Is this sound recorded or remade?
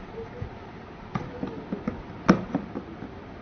recorded